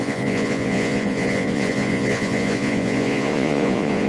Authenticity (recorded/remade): remade